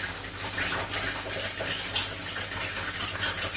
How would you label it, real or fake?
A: real